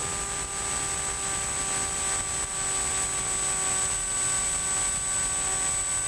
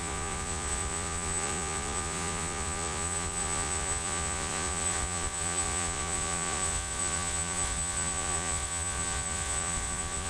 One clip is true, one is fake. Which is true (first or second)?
first